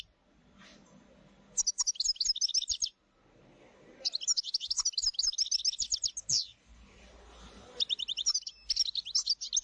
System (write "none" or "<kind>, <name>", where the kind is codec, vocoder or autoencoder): none